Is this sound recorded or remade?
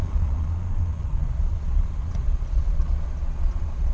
remade